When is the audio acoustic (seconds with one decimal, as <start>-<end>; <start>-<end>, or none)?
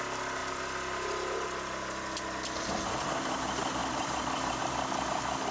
0.0-0.4; 2.8-3.8; 4.6-5.5